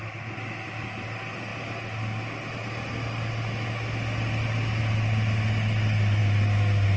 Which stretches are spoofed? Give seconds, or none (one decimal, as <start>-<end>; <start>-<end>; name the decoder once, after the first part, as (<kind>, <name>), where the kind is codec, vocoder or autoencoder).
none